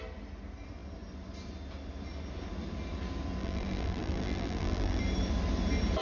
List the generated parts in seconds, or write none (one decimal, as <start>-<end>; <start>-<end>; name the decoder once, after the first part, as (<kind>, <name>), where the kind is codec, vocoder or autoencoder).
3.4-5.0 (vocoder, BigVGAN v2)